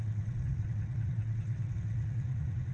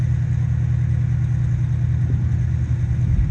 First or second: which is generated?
first